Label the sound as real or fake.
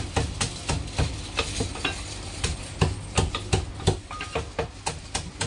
real